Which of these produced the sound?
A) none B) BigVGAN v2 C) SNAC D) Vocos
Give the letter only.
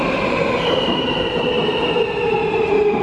B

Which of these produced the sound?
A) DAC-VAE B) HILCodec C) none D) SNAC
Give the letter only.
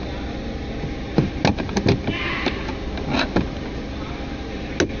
C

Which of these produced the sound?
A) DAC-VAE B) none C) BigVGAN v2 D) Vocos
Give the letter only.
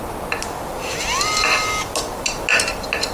B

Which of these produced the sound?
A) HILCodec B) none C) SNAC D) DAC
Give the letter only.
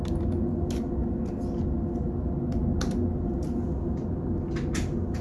B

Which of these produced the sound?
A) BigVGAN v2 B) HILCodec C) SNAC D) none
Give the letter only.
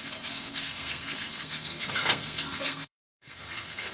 C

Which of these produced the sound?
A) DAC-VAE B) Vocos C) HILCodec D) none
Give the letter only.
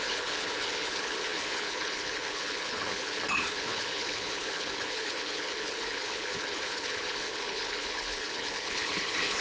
C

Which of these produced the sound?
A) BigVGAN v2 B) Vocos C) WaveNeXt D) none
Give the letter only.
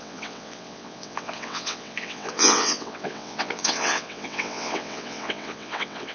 C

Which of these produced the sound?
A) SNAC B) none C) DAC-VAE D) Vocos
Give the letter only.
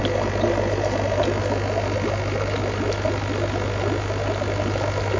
B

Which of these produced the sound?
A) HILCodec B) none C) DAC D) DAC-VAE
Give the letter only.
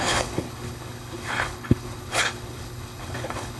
A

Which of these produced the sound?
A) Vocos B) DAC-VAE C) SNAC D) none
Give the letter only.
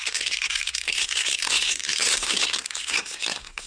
C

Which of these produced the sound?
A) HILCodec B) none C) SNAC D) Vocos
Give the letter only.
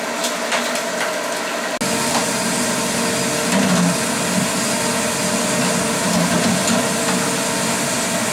B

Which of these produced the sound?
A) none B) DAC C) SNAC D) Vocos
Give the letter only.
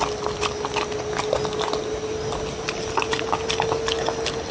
A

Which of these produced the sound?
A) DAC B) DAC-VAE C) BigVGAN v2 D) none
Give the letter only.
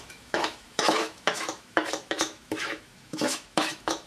B